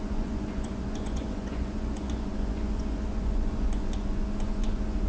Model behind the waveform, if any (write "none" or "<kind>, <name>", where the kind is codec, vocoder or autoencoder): vocoder, Vocos